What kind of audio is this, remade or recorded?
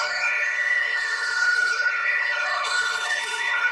remade